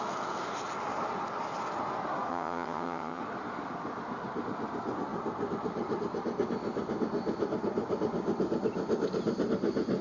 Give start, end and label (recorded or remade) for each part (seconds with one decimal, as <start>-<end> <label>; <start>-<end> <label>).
0.0-2.3 recorded; 2.3-3.2 remade; 3.2-10.0 recorded